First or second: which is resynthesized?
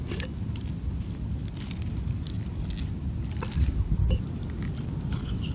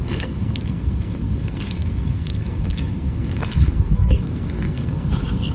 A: second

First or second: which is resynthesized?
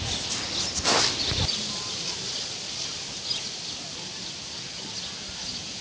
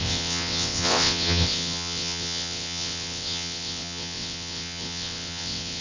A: second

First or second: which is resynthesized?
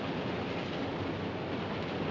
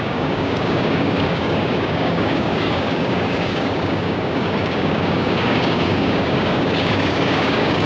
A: second